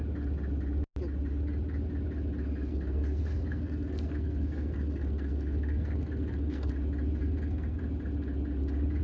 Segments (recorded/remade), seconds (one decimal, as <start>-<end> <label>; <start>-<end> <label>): 0.0-2.7 recorded; 2.7-6.7 remade; 6.7-7.2 recorded; 7.2-7.8 remade; 7.8-9.0 recorded